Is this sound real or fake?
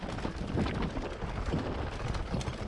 real